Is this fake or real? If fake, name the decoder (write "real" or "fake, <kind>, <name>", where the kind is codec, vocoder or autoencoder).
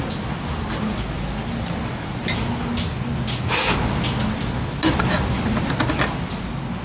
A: real